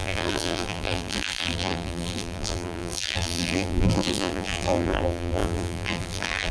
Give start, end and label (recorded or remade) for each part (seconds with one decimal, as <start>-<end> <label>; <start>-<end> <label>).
0.0-6.5 remade